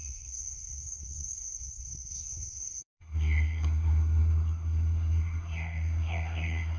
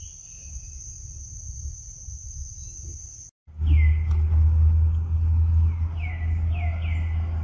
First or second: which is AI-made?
first